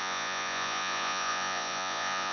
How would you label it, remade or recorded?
remade